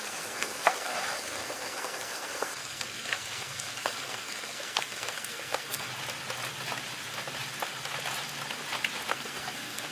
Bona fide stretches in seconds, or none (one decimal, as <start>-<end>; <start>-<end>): 5.9-9.1